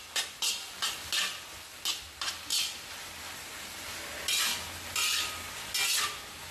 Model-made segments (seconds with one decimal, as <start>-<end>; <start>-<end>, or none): 2.5-3.1